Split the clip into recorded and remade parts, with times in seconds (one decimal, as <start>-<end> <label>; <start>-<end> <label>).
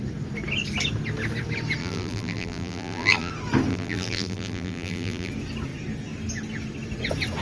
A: 0.0-1.8 recorded; 1.8-3.3 remade; 3.3-3.7 recorded; 3.7-5.3 remade; 5.3-7.4 recorded